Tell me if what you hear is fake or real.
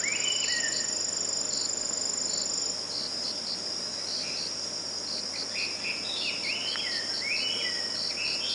real